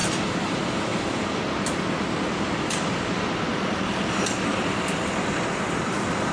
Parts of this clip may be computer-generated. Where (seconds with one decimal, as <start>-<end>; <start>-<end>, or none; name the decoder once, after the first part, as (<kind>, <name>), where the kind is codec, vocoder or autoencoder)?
3.5-6.3 (vocoder, BigVGAN v2)